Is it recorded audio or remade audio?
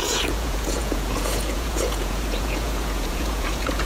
remade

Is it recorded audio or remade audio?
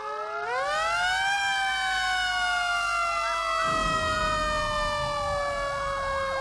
recorded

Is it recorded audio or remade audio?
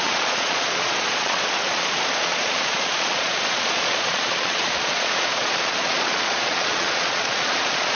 remade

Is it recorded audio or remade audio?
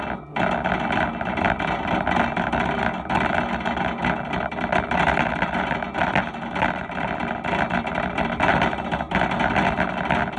recorded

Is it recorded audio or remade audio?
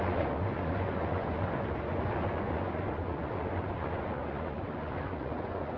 remade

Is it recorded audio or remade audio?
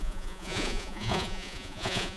remade